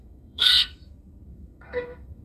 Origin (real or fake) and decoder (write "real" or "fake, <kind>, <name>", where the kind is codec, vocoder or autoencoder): fake, codec, SNAC